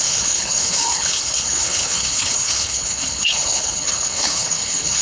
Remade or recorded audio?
remade